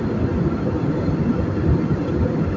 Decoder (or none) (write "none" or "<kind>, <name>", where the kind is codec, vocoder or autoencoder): none